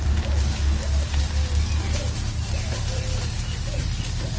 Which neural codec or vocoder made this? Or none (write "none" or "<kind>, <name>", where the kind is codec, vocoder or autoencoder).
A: none